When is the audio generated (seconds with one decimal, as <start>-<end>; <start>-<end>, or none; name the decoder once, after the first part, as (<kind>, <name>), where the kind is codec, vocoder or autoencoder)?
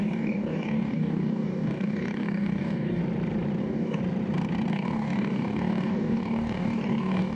0.0-3.0 (codec, DAC); 3.6-4.0; 4.7-7.4